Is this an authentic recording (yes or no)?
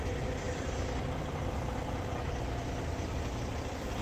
yes